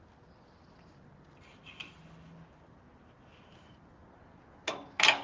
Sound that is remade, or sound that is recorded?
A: recorded